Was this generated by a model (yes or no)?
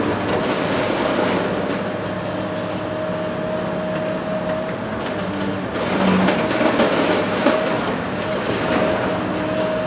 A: no